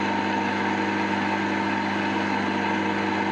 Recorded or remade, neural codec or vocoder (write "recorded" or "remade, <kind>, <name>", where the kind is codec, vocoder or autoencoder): recorded